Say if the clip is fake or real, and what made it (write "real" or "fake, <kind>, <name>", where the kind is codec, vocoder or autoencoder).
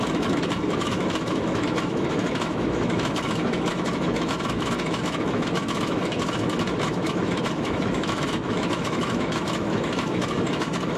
fake, autoencoder, DAC-VAE